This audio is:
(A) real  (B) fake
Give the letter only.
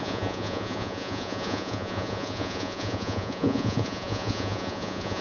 B